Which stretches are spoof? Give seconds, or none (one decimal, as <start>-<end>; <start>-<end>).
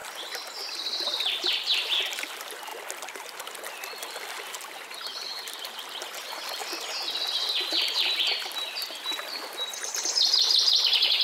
1.4-2.7; 4.3-6.6; 7.6-11.2